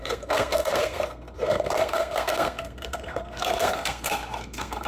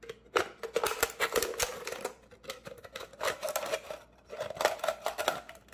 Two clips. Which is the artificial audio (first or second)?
first